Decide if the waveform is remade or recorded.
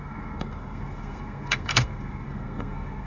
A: remade